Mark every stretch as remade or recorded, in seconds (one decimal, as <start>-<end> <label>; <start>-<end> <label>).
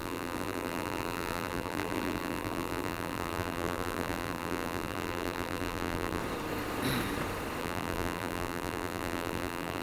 0.0-6.2 remade; 6.2-7.6 recorded; 7.6-9.8 remade